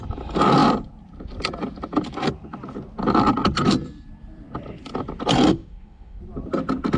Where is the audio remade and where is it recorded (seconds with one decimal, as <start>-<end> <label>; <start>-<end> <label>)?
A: 0.0-5.5 recorded; 5.5-6.2 remade; 6.2-7.0 recorded